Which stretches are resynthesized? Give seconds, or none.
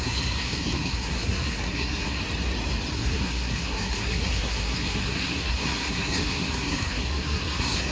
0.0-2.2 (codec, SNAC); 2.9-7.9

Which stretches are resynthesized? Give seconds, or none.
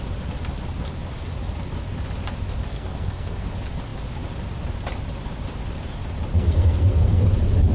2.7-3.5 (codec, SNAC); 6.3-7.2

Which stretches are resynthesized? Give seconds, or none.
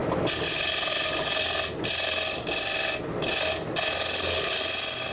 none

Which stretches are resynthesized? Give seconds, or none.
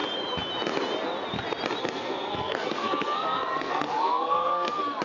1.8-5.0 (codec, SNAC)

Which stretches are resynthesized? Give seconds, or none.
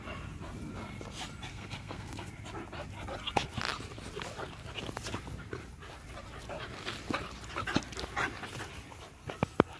1.5-2.3 (codec, SNAC)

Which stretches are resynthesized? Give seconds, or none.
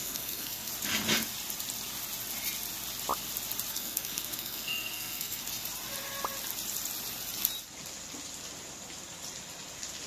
0.0-0.7 (codec, SNAC); 3.7-5.4